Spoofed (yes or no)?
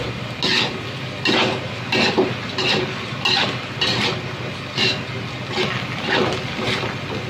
no